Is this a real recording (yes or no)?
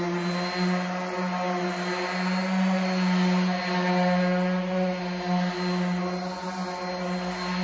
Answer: yes